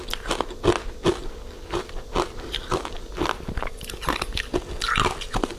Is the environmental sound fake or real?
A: real